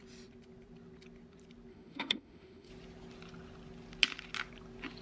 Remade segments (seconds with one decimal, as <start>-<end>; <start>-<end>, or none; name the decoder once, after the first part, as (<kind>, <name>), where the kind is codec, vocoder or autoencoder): 1.7-2.7 (autoencoder, DAC-VAE)